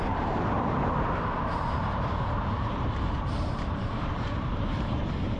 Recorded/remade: remade